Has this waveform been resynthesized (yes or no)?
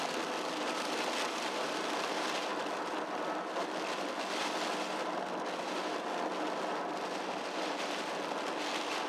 no